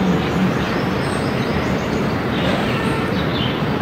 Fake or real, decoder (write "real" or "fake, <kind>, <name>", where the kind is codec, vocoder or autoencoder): real